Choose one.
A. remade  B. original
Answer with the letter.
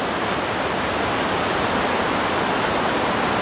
B